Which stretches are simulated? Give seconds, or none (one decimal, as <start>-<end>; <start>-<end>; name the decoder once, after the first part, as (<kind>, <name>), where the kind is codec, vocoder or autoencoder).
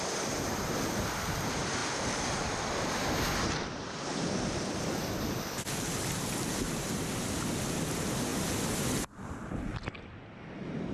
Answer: 0.0-9.7 (vocoder, BigVGAN v2)